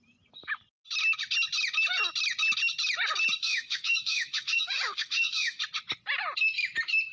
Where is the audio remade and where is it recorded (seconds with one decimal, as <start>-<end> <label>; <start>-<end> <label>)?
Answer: 0.0-3.4 recorded; 3.4-5.6 remade; 5.6-7.1 recorded